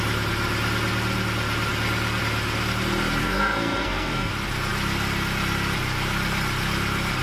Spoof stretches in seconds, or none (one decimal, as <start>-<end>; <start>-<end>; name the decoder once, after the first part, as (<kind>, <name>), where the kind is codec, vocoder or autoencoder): 3.2-4.3 (codec, SNAC)